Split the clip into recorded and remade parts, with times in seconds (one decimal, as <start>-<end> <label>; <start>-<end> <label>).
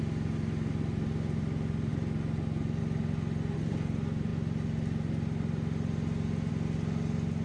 0.0-7.4 recorded